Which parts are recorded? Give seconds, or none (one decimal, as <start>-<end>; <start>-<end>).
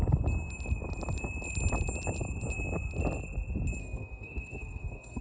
0.0-3.8